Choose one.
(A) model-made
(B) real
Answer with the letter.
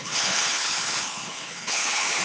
A